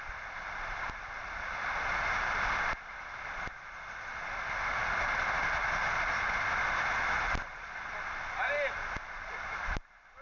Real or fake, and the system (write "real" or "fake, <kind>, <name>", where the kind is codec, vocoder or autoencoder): real